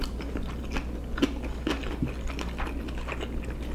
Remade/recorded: recorded